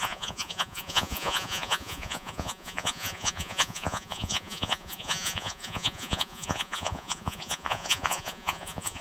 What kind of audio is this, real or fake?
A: fake